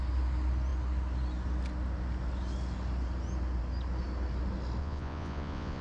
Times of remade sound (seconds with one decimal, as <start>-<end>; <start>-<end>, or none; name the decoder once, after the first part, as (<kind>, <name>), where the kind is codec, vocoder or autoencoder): 4.8-5.8 (vocoder, Vocos)